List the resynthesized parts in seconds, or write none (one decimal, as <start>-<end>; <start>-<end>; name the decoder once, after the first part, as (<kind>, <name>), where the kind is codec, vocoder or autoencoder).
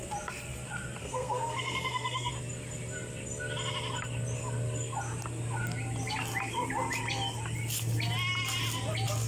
1.0-2.3 (codec, SNAC)